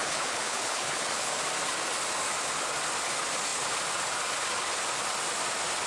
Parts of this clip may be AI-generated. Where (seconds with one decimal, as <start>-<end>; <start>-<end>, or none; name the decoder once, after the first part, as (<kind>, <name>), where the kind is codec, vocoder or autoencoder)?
0.0-1.4 (codec, HILCodec)

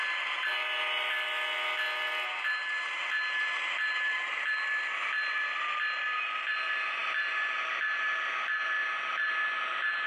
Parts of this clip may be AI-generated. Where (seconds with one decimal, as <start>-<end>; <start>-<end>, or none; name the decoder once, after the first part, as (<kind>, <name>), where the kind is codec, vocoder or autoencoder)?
7.0-7.7 (vocoder, BigVGAN v2)

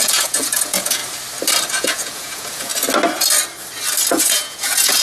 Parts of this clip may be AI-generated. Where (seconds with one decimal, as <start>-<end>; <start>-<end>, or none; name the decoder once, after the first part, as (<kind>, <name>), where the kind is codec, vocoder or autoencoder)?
0.0-1.0 (vocoder, Vocos); 1.7-2.7; 4.1-5.0